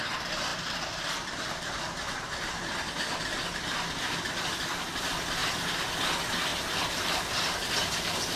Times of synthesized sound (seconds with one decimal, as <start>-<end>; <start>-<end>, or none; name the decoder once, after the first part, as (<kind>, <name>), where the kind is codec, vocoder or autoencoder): 0.5-2.6 (vocoder, BigVGAN v2); 6.5-7.7